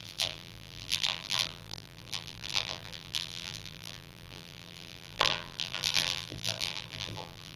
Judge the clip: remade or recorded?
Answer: remade